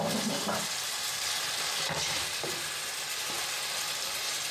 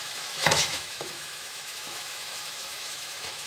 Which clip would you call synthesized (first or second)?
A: second